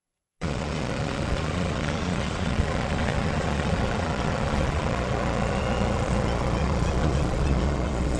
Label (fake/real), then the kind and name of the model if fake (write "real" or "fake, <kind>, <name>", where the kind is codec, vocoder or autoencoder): fake, vocoder, Vocos